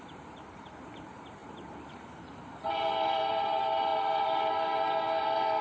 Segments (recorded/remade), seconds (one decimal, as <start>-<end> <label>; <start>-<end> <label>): 0.0-5.6 remade